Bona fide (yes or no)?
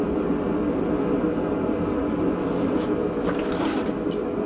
yes